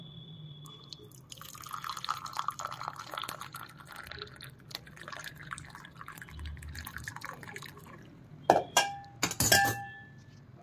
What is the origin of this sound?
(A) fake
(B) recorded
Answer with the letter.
B